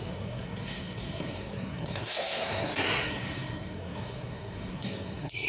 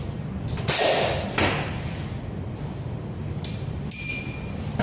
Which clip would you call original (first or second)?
second